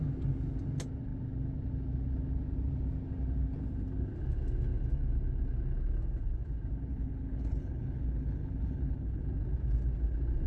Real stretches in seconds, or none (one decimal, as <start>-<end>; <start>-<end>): 0.0-6.9; 9.2-10.5

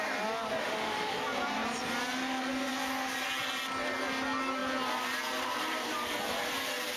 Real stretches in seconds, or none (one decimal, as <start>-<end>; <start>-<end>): 0.0-0.6; 1.2-7.0

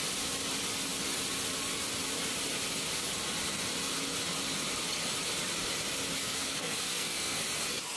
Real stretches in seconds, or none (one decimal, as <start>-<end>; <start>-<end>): 0.0-6.2; 7.4-8.0

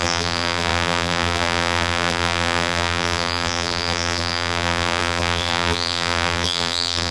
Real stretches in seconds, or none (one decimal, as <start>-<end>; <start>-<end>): none

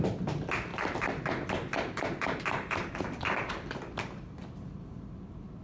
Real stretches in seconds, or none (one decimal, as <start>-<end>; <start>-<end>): 0.0-0.7; 3.5-5.6

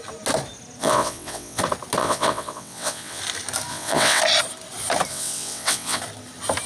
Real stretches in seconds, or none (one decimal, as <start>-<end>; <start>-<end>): 0.0-0.8; 1.6-2.0; 3.2-3.7; 4.2-5.1; 6.0-6.7

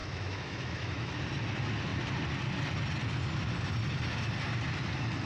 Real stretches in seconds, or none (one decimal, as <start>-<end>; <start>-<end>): 1.1-5.3

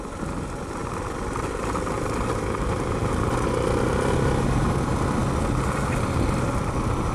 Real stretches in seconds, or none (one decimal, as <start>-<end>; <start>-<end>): 0.0-7.1